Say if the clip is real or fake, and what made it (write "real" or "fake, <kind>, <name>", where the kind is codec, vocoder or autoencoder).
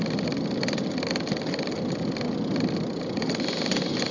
real